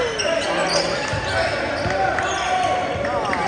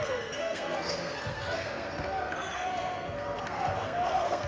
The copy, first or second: second